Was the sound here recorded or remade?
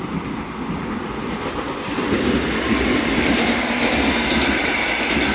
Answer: recorded